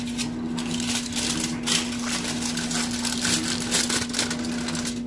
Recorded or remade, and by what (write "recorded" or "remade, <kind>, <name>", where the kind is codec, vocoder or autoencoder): recorded